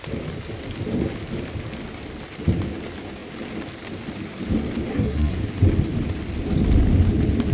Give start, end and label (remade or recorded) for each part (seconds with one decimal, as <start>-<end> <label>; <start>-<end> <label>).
0.0-4.9 recorded; 4.9-5.4 remade; 5.4-7.5 recorded

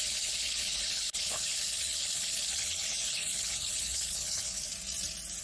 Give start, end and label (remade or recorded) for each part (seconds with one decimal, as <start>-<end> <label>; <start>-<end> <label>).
0.0-4.7 remade; 4.7-5.4 recorded

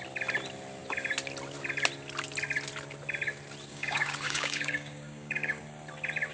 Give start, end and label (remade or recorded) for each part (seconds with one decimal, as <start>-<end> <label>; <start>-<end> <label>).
0.0-3.7 recorded; 3.7-5.6 remade; 5.6-6.3 recorded

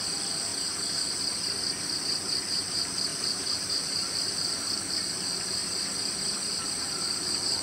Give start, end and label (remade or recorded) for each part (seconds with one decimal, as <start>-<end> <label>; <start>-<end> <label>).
0.0-0.5 remade; 0.5-2.4 recorded; 2.4-5.6 remade; 5.6-7.0 recorded; 7.0-7.6 remade

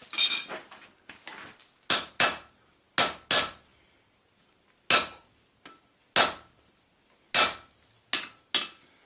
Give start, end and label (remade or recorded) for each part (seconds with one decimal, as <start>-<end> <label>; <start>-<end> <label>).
0.0-9.1 recorded

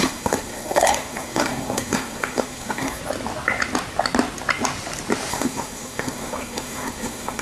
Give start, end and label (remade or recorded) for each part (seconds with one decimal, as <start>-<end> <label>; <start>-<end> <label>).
0.0-3.0 remade; 3.0-5.3 recorded; 5.3-7.4 remade